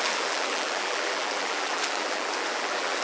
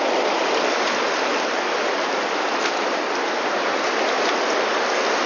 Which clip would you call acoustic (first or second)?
second